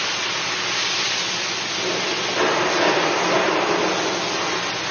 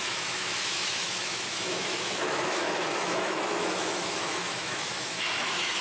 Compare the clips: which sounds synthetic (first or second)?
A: second